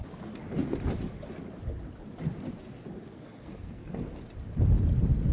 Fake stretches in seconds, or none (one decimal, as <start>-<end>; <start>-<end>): 3.1-4.2